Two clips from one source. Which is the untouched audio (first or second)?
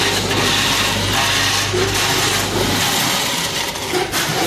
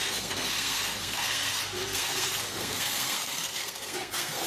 first